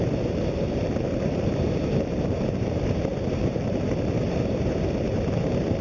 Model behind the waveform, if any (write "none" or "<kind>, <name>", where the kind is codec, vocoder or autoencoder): vocoder, BigVGAN v2